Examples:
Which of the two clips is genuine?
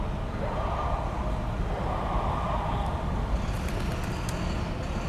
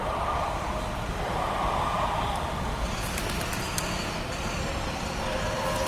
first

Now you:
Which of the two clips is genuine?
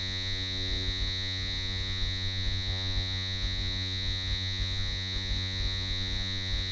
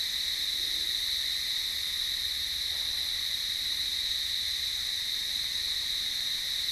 second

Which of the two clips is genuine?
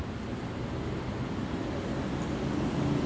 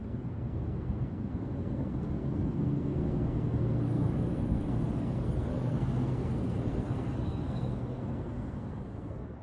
first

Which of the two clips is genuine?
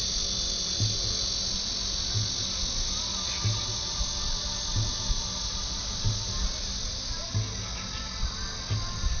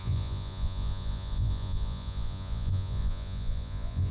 first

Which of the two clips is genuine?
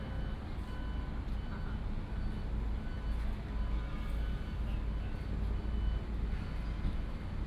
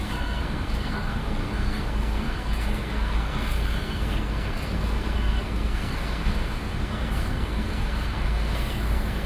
first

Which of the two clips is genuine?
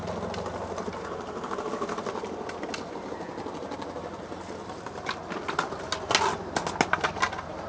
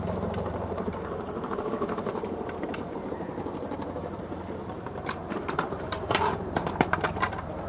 first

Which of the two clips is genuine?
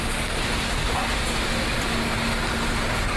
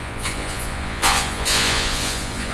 first